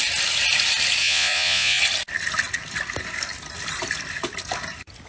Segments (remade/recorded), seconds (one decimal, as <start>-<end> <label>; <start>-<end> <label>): 0.0-1.0 recorded; 1.0-1.8 remade; 1.8-5.1 recorded